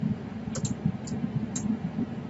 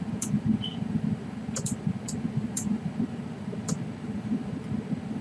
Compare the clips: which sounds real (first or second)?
first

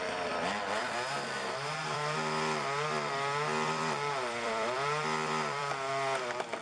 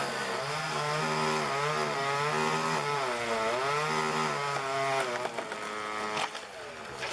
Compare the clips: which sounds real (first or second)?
second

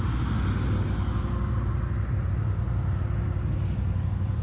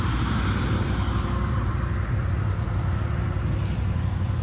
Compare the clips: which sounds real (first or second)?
first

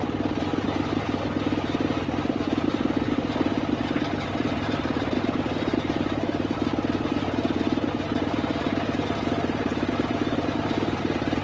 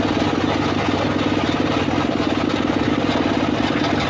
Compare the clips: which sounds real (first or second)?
second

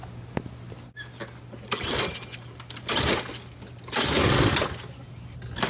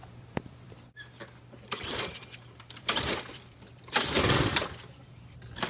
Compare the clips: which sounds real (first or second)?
first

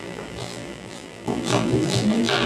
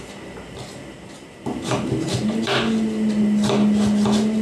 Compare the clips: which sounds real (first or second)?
second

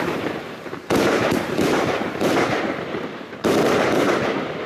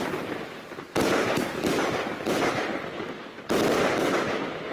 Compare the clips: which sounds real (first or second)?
second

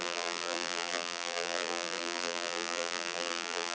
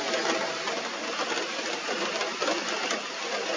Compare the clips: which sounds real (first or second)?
second